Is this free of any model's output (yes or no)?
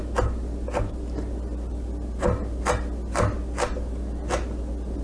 yes